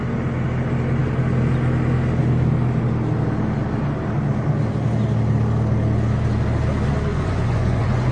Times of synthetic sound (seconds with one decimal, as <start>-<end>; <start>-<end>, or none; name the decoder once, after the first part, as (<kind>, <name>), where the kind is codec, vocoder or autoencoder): 7.1-8.1 (vocoder, Vocos)